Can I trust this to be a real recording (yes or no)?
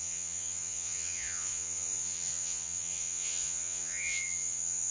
no